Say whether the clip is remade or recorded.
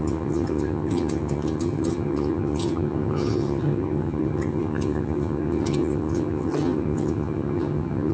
remade